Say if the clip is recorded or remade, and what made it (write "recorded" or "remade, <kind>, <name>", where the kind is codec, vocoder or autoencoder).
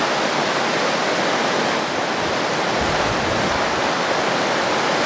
recorded